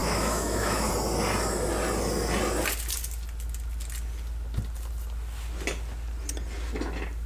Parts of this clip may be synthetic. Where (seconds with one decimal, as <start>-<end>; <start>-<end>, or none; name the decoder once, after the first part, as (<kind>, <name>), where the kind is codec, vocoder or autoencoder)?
0.0-0.9 (autoencoder, DAC-VAE)